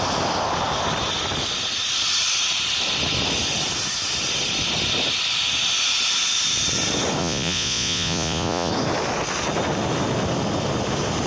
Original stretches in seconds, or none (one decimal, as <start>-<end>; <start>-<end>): 0.0-7.2; 8.7-11.3